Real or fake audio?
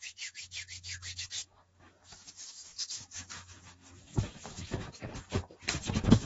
fake